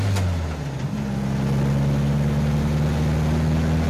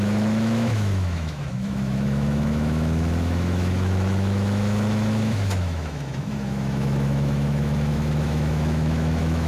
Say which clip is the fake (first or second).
second